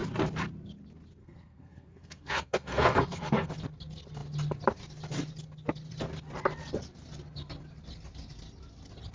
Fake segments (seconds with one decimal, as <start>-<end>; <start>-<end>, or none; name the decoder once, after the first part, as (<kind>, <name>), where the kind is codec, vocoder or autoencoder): 1.2-3.5 (codec, SNAC)